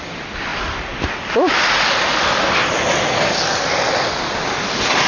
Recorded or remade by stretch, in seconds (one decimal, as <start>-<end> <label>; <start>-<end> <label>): 0.0-5.1 recorded